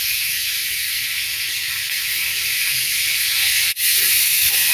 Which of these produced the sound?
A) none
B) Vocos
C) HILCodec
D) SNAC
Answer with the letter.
D